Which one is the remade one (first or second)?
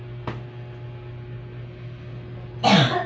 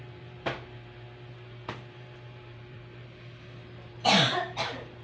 second